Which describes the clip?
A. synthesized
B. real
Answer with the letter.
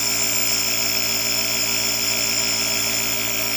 B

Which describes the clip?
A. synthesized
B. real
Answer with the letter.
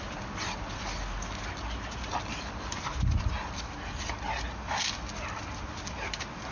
B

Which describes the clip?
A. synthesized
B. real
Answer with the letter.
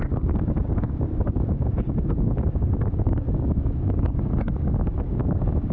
A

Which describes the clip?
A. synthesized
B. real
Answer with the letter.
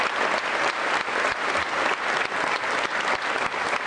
B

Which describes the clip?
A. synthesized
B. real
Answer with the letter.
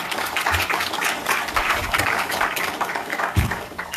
A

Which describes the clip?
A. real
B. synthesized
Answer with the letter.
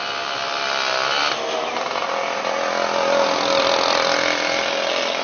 A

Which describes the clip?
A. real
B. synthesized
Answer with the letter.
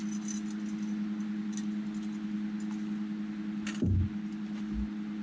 A